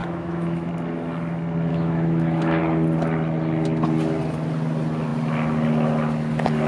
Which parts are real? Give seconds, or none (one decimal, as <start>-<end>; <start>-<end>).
0.7-1.7; 2.6-6.7